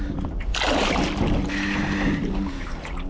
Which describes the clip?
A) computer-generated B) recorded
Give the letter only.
B